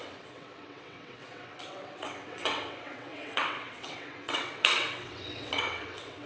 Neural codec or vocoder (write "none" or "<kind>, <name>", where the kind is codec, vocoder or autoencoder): vocoder, WaveNeXt